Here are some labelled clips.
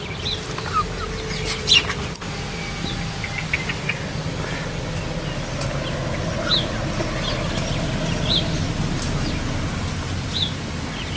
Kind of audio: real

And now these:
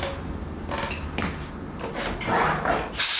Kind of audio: real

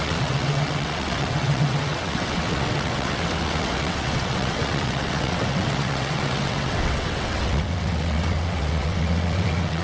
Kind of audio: fake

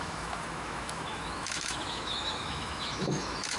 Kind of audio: fake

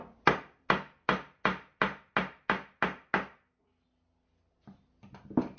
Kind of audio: real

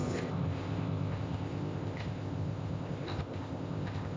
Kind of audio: fake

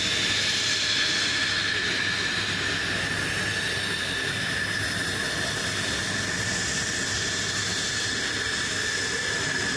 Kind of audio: real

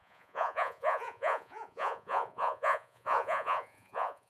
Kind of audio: fake